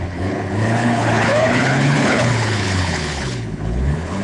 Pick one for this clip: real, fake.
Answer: fake